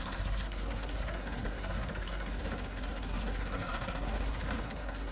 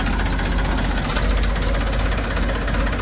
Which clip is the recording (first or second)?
second